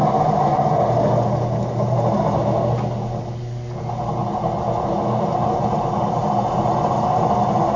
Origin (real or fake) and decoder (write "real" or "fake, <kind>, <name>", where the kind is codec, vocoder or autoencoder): real